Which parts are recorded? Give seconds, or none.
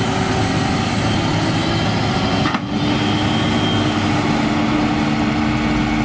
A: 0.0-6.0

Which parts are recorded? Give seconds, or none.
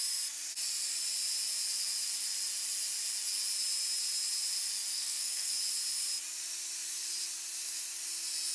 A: 0.0-4.9; 5.5-8.5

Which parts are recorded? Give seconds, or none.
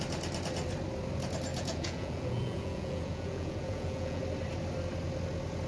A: 0.0-1.5; 4.2-5.7